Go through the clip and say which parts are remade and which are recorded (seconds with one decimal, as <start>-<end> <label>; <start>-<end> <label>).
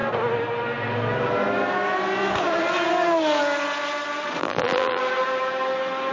0.0-4.4 recorded; 4.4-5.0 remade; 5.0-6.1 recorded